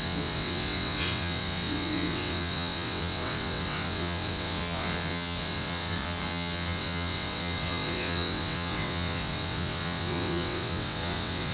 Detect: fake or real fake